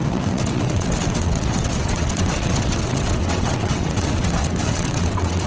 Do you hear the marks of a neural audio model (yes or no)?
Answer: yes